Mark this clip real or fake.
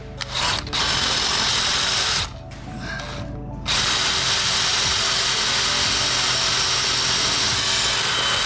real